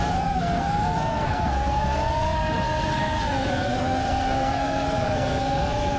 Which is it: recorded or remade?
remade